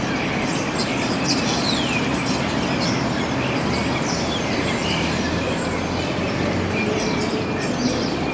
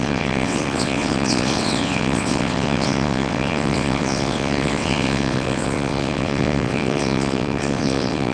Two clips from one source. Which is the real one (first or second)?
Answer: first